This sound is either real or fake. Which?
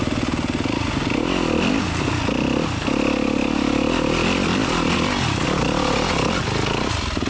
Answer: real